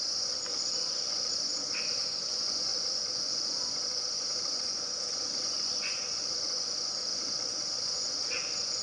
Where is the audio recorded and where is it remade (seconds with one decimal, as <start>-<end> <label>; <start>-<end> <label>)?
0.0-8.8 remade